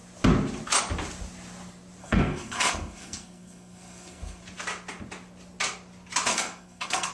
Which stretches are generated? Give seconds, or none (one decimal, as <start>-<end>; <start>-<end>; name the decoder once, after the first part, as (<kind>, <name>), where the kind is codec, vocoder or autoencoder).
2.0-4.4 (codec, SNAC); 6.3-7.1